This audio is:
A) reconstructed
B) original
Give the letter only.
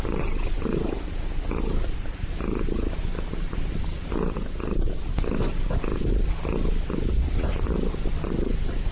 B